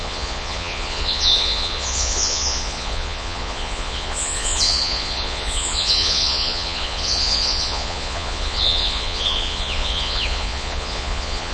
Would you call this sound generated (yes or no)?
yes